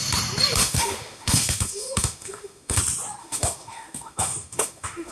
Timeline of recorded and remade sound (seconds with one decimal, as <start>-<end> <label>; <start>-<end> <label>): 0.0-0.6 recorded; 0.6-2.8 remade; 2.8-3.2 recorded; 3.2-5.1 remade